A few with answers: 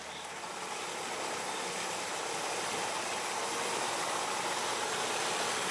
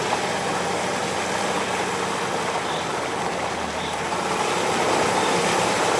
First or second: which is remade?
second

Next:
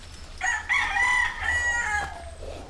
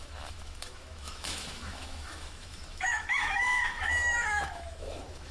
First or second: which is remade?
second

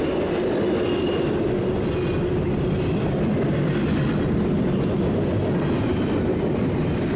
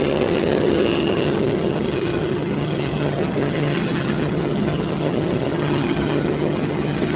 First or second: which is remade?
second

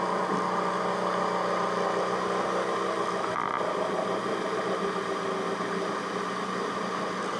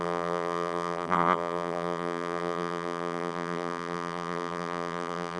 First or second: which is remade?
second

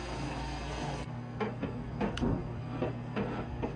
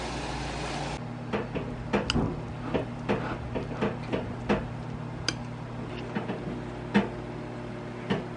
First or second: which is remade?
first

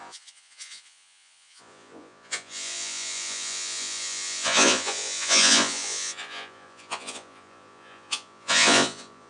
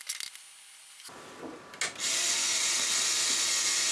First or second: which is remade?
first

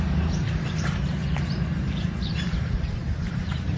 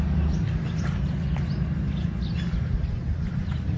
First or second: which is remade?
first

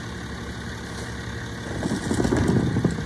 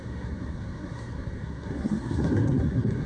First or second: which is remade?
second